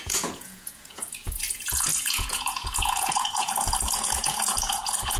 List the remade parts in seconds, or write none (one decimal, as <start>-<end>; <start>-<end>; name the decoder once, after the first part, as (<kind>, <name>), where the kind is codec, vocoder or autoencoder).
0.0-5.2 (vocoder, Vocos)